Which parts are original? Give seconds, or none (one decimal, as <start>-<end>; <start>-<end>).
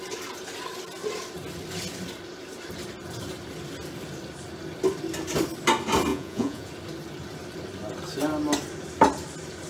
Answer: 0.0-6.1; 6.7-9.7